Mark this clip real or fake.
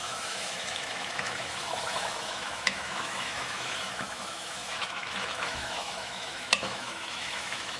fake